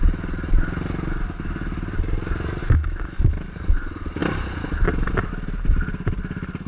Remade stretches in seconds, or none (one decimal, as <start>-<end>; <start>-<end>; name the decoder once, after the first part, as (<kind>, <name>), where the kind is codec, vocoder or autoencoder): 2.6-3.3 (autoencoder, DAC-VAE)